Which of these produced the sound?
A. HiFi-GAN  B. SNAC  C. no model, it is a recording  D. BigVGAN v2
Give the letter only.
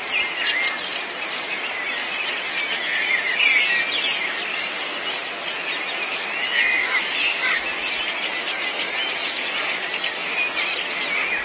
C